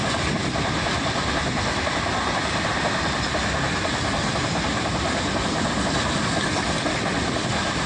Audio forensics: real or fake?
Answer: real